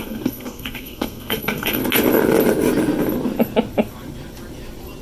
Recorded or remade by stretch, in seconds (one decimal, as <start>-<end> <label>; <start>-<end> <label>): 0.0-1.8 remade; 1.8-5.0 recorded